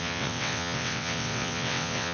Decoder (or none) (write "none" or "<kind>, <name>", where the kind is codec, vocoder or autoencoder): vocoder, WaveNeXt